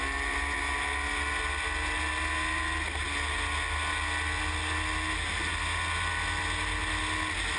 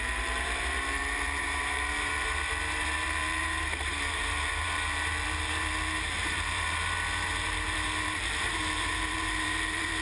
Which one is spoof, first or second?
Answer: second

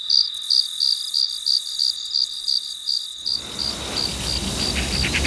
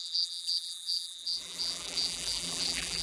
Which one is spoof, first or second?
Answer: second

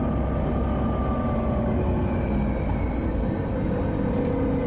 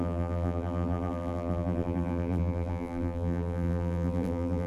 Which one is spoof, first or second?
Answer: second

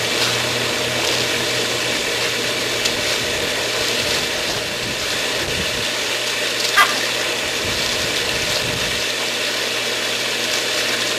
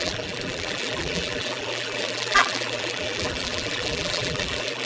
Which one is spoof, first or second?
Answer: second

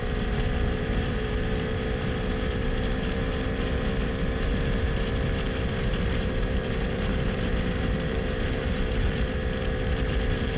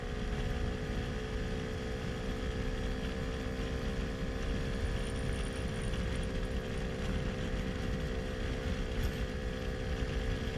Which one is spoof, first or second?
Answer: first